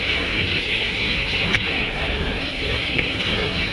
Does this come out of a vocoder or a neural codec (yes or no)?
yes